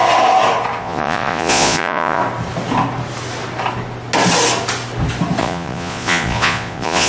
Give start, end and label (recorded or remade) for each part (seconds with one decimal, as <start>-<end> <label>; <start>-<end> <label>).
0.0-0.8 recorded; 0.8-2.2 remade; 2.2-5.4 recorded; 5.4-7.1 remade